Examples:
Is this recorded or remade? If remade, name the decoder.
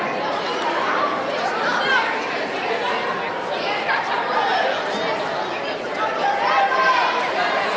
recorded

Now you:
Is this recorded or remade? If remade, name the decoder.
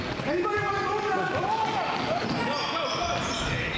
recorded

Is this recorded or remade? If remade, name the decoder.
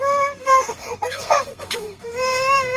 remade, codec, SNAC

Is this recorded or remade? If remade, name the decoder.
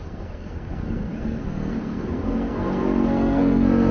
remade, codec, SNAC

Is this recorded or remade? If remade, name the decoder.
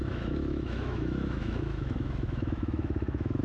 remade, autoencoder, DAC-VAE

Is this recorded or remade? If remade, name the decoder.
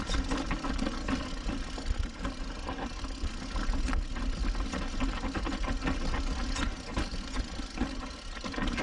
recorded